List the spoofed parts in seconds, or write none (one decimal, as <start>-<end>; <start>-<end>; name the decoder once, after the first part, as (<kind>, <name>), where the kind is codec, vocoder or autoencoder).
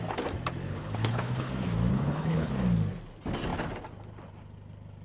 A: 0.7-1.5 (codec, HILCodec); 1.9-2.5